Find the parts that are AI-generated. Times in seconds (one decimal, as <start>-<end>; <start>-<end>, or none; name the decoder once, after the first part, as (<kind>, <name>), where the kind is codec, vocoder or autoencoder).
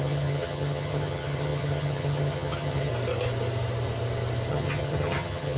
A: 0.0-2.9 (vocoder, HiFi-GAN); 4.5-5.6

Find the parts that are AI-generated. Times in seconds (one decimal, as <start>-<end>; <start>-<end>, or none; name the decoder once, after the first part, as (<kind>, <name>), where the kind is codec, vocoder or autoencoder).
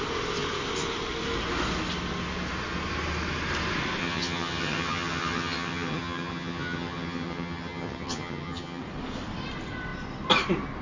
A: 4.0-8.8 (vocoder, HiFi-GAN)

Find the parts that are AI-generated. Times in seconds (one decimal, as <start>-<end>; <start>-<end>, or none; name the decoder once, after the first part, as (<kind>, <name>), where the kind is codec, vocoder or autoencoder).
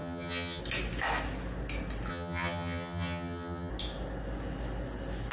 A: 0.0-0.6 (vocoder, HiFi-GAN); 2.1-3.7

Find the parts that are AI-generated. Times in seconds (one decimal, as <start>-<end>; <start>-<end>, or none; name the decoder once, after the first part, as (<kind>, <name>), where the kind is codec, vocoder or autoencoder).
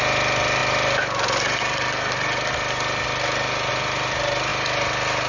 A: none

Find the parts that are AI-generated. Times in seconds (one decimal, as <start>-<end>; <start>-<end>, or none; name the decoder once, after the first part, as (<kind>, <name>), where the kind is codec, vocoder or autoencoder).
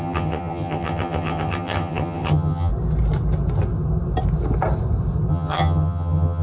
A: 0.0-2.7 (vocoder, HiFi-GAN); 5.3-6.4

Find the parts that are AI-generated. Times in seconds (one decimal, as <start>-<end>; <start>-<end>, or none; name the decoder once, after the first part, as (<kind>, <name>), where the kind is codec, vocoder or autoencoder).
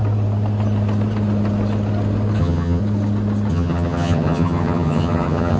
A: 2.4-2.8 (vocoder, HiFi-GAN); 3.5-5.6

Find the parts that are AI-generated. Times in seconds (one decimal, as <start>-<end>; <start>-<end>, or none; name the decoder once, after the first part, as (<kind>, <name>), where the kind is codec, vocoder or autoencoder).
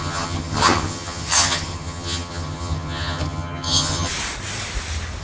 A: 0.0-4.1 (vocoder, HiFi-GAN)